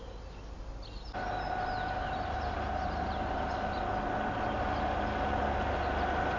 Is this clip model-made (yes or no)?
no